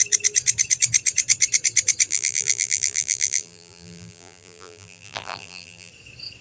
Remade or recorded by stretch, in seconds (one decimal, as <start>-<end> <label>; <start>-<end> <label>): 0.0-2.1 recorded; 2.1-5.9 remade; 5.9-6.4 recorded